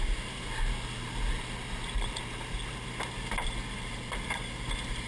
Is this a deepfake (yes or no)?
no